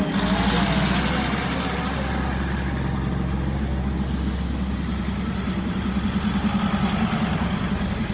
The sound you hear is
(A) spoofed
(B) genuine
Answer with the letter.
B